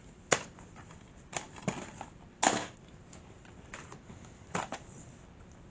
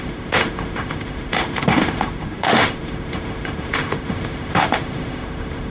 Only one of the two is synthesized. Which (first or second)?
second